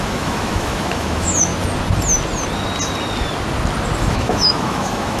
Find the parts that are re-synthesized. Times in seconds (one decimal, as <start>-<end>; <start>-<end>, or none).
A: 0.0-1.5; 4.0-5.2